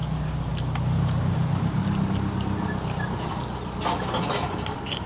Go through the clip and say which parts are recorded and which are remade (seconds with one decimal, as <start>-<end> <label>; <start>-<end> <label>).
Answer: 0.0-0.5 recorded; 0.5-1.8 remade; 1.8-5.1 recorded